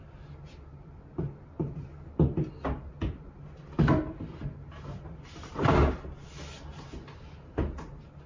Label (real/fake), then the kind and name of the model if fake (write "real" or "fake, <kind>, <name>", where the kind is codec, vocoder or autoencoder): real